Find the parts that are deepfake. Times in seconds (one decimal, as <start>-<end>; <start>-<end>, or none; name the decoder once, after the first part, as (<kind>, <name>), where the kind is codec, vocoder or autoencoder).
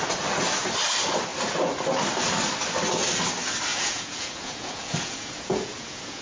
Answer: 3.7-6.2 (vocoder, Vocos)